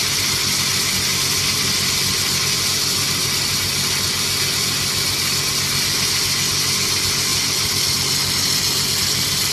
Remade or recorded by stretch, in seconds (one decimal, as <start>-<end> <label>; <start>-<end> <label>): 0.0-9.5 recorded